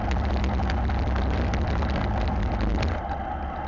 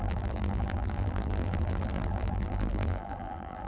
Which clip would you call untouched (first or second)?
first